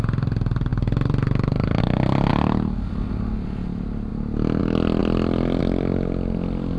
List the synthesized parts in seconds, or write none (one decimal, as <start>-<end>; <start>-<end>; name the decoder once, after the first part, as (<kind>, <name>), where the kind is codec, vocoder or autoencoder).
0.7-1.8 (vocoder, BigVGAN v2); 5.0-5.6